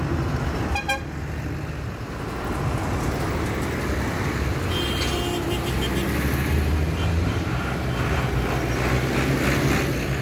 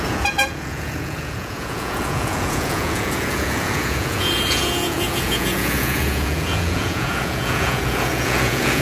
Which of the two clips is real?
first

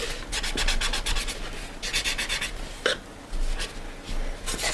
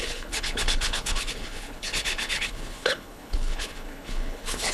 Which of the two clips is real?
first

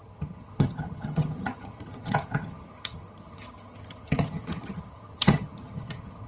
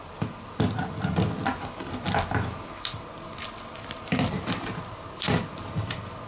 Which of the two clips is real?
second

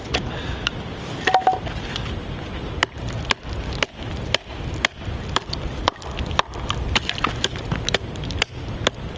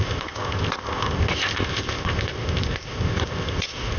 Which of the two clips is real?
first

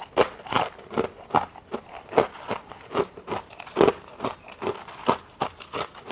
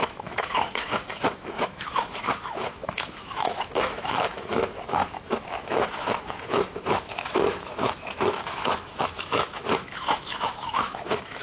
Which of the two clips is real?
first